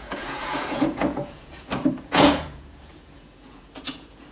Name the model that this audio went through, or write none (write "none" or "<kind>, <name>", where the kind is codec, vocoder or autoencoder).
vocoder, Vocos